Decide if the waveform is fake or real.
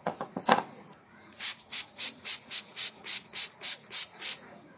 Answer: fake